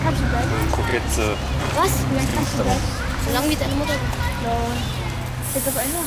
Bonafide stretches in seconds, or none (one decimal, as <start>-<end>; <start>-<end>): 0.0-6.1